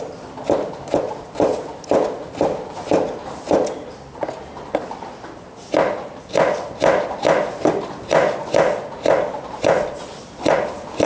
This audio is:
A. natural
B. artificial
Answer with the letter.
A